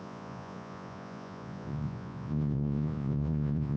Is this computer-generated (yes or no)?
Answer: yes